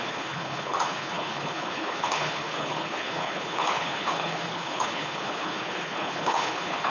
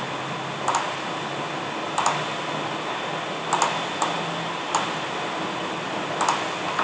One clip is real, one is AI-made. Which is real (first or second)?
second